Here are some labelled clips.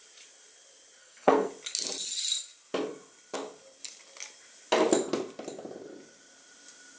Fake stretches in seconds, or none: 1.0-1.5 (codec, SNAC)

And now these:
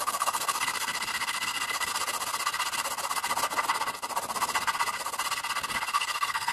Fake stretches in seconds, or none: 0.0-1.9 (codec, SNAC); 5.8-6.5

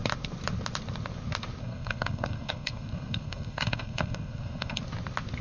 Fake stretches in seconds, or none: 1.6-4.8 (codec, SNAC)

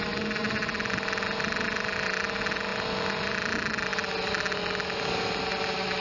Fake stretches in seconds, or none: none